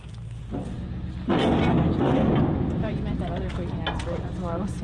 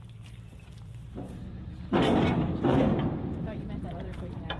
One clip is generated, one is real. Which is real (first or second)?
first